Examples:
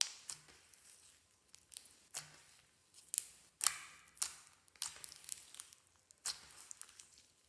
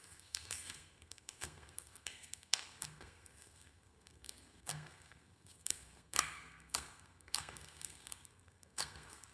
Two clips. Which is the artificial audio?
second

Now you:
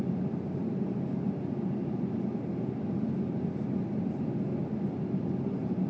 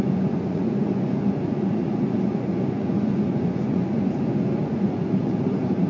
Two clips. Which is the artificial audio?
second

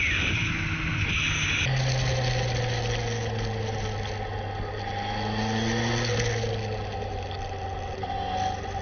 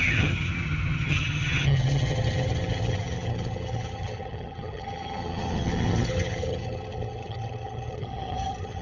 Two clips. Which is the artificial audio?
second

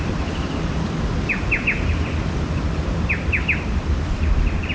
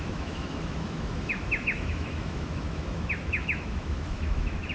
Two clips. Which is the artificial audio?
second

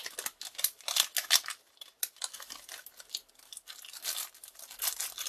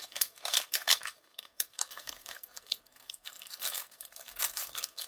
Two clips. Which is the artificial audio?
second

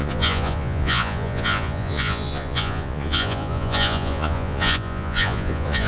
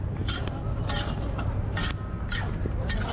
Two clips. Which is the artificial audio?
first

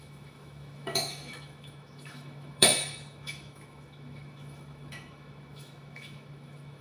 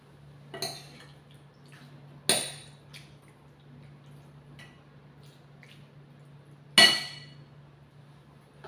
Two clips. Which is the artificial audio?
first